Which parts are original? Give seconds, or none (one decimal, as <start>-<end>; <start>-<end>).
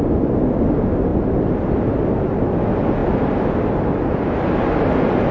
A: 0.0-1.1; 2.6-5.3